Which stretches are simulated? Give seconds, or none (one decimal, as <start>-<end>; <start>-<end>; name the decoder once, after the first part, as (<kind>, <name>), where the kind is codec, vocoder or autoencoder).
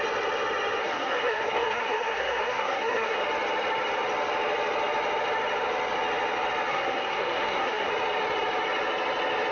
0.8-3.2 (codec, SNAC); 6.7-7.9